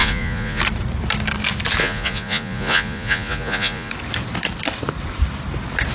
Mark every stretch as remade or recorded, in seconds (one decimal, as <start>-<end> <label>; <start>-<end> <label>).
0.0-0.6 remade; 0.6-1.8 recorded; 1.8-3.9 remade; 3.9-5.9 recorded